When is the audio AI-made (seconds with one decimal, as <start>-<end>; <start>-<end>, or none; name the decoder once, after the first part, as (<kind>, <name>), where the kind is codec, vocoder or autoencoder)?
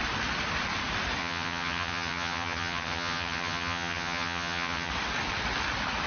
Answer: 1.2-4.9 (vocoder, HiFi-GAN)